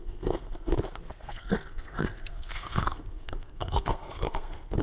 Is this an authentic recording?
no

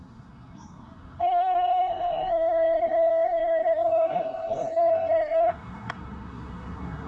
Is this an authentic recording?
no